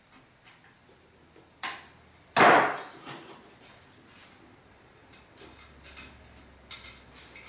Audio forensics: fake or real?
real